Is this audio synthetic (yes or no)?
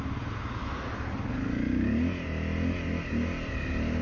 no